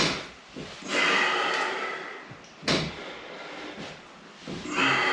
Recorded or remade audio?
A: recorded